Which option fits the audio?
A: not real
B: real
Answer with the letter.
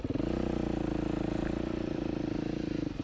B